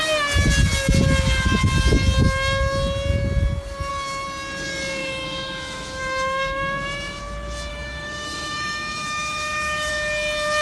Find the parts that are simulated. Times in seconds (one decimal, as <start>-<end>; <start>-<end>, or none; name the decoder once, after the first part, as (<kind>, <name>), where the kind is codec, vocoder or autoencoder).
5.0-7.2 (autoencoder, DAC-VAE); 7.7-9.9